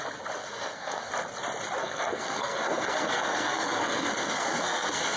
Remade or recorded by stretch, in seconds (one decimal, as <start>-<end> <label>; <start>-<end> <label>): 0.0-0.4 recorded; 0.4-1.1 remade; 1.1-1.8 recorded; 1.8-5.2 remade